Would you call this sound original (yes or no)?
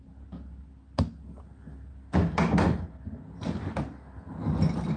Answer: yes